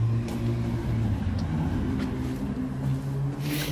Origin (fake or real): real